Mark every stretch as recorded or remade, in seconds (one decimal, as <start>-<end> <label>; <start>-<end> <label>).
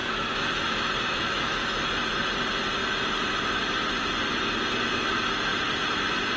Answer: 0.0-1.9 remade; 1.9-6.4 recorded